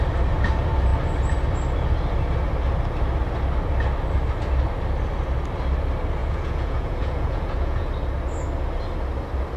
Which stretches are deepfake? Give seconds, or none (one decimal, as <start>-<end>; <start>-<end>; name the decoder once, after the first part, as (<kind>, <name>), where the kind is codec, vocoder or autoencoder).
6.2-7.9 (vocoder, Vocos)